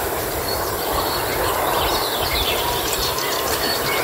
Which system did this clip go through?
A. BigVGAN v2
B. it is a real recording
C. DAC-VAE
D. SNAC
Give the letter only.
A